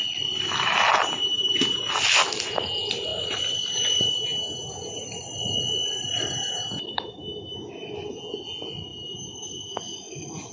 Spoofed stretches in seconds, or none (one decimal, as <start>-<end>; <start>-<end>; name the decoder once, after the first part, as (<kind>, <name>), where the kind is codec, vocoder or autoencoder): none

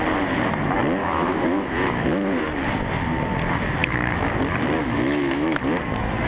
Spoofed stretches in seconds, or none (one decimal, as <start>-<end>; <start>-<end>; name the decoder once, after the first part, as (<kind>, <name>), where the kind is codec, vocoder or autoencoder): 1.0-2.4 (autoencoder, DAC-VAE); 3.8-4.3; 4.8-5.6

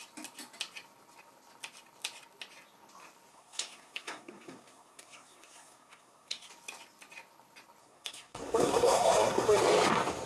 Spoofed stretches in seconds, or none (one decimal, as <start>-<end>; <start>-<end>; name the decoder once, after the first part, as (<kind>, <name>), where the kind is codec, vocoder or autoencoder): 3.3-6.5 (codec, SNAC); 7.8-9.6

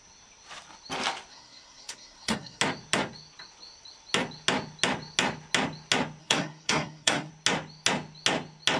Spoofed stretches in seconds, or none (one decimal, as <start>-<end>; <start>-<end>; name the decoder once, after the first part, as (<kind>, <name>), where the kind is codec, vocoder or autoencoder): 1.3-2.6 (codec, SNAC); 6.2-7.3

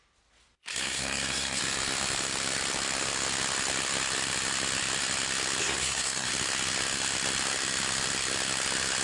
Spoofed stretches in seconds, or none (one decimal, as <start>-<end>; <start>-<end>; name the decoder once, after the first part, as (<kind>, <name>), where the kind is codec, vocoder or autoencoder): 0.7-1.6 (codec, SNAC); 5.6-6.3

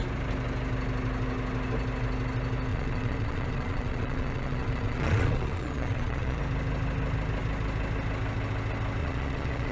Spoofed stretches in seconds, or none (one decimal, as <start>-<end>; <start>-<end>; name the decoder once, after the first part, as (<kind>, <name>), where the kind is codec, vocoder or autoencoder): 2.7-6.4 (vocoder, Vocos); 9.0-9.7

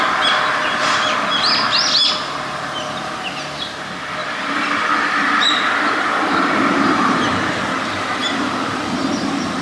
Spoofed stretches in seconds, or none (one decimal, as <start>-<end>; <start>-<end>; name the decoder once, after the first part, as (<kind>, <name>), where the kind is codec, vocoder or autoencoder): 4.2-7.6 (vocoder, BigVGAN v2); 8.2-9.1

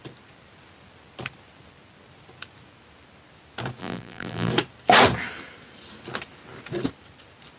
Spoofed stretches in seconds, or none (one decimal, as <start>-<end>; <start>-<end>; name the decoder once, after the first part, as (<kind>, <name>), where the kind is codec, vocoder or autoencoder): 3.8-4.5 (vocoder, BigVGAN v2)